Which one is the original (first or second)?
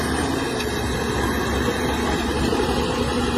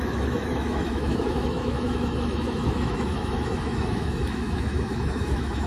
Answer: first